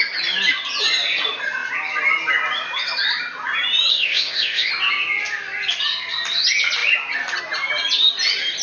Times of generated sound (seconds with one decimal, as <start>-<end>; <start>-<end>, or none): 3.9-4.7